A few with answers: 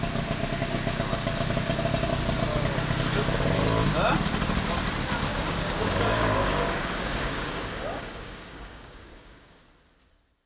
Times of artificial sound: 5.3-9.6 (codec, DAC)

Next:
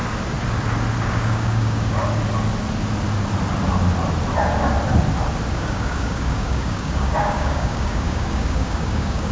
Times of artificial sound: 1.0-2.0 (codec, DAC); 5.5-9.3

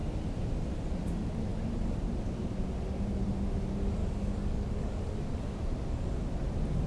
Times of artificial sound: 4.0-5.0 (codec, DAC)

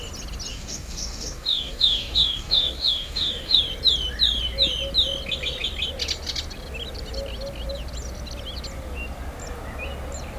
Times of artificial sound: 0.5-3.6 (codec, DAC)

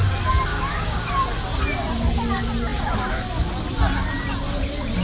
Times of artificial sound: 0.5-1.1 (codec, DAC)